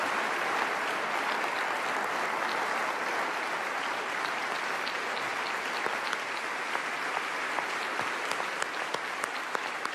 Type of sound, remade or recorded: recorded